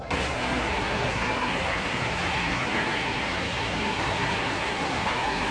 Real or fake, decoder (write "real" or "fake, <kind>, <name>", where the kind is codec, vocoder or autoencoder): fake, codec, SNAC